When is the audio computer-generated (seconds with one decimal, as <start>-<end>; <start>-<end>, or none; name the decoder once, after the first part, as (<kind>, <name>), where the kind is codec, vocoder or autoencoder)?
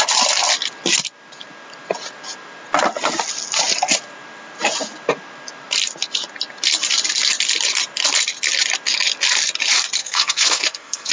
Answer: 10.0-11.1 (codec, SNAC)